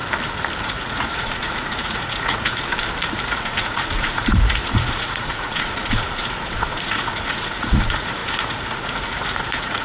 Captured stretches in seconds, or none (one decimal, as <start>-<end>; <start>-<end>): 0.0-0.6; 2.7-3.2